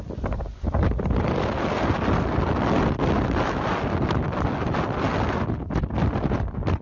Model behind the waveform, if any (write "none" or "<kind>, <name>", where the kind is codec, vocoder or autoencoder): none